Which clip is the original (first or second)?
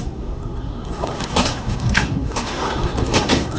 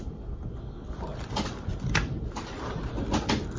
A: second